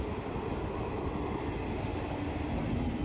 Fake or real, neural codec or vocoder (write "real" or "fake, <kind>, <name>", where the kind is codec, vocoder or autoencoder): real